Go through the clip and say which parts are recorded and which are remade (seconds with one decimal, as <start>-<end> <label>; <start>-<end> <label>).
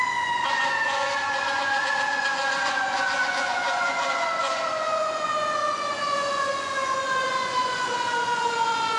0.0-9.0 remade